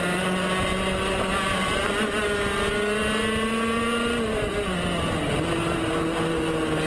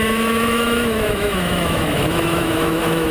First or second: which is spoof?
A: second